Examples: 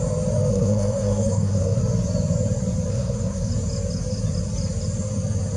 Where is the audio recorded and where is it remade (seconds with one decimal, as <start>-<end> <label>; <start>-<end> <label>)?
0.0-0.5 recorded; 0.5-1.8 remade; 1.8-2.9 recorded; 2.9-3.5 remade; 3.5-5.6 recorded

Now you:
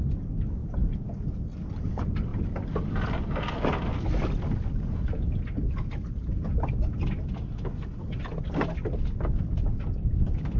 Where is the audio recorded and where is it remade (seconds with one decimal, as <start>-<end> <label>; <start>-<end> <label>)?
0.0-10.6 recorded

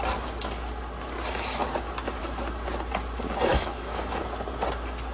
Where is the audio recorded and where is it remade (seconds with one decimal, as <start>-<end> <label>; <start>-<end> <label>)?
0.0-3.5 recorded; 3.5-4.2 remade; 4.2-5.1 recorded

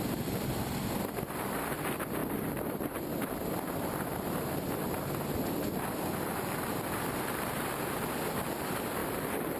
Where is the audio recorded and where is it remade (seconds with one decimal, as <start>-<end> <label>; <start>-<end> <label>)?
0.0-9.6 remade